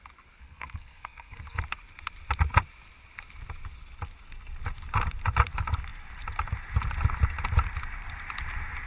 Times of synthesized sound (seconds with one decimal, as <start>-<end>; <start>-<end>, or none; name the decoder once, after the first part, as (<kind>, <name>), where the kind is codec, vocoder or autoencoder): 0.4-1.6 (codec, SNAC)

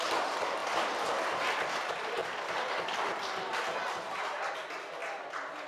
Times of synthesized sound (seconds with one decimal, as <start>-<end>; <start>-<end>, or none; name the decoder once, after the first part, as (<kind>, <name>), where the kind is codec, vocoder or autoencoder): 2.2-4.5 (vocoder, BigVGAN v2)